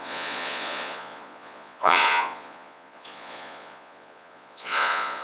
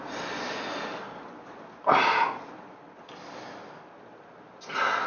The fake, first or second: first